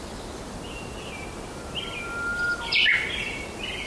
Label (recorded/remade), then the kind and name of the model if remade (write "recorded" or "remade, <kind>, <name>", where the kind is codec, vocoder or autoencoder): recorded